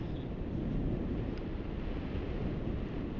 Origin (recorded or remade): recorded